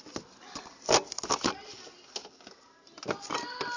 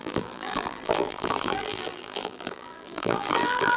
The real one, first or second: first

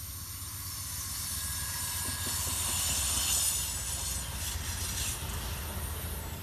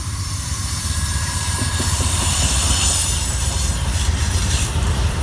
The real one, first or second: first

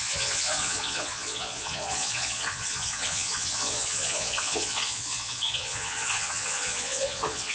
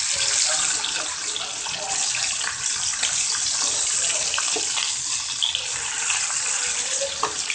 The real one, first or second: second